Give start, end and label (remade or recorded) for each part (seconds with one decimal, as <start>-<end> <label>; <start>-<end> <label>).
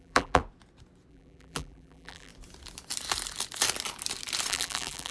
0.0-0.4 remade; 0.4-1.1 recorded; 1.1-2.3 remade; 2.3-4.5 recorded; 4.5-5.1 remade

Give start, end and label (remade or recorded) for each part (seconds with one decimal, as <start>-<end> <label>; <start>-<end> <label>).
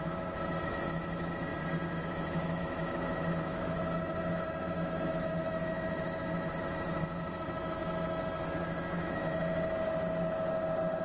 0.0-1.5 remade; 1.5-2.0 recorded; 2.0-9.2 remade; 9.2-11.0 recorded